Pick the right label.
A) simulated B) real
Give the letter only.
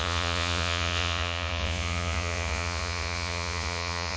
A